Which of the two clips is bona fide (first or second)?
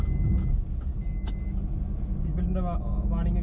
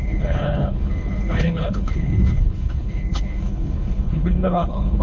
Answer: first